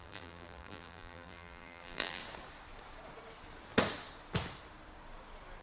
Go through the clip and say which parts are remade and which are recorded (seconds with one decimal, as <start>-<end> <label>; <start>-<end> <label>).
0.0-2.2 remade; 2.2-5.6 recorded